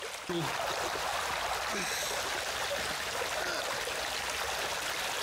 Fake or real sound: real